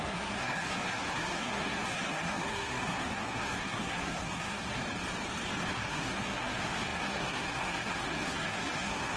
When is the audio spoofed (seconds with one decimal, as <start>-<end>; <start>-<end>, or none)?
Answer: 0.0-4.8; 5.7-9.2